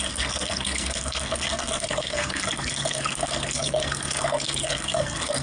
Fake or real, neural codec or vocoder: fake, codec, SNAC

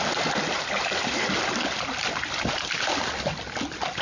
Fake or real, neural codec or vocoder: real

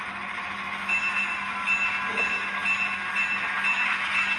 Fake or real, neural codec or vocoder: real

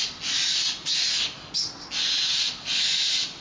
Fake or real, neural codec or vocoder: real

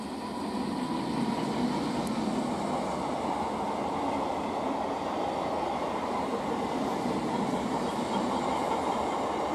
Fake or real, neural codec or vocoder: real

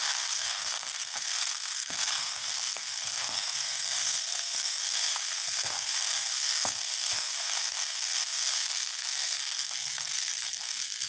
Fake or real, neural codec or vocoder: fake, codec, SNAC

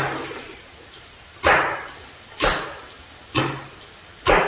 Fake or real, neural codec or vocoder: real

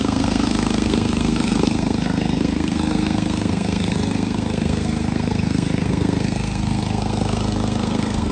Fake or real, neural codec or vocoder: fake, codec, SNAC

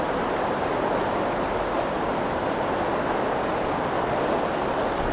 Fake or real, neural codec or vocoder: real